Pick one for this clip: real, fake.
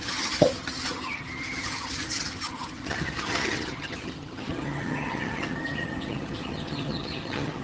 fake